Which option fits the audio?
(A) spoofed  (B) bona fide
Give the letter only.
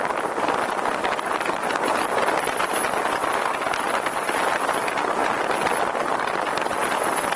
B